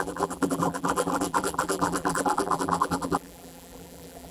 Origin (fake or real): fake